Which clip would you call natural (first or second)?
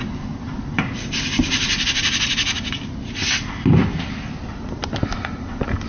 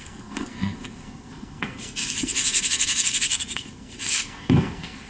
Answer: first